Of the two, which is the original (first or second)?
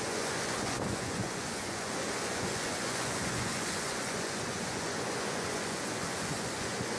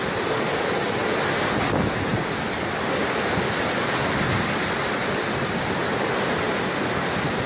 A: second